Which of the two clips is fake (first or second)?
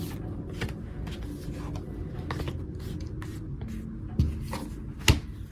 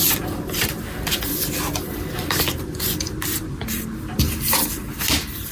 second